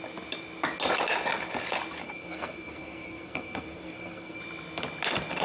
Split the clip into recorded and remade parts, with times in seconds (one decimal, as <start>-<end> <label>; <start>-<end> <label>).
0.0-2.0 recorded; 2.0-4.4 remade; 4.4-5.4 recorded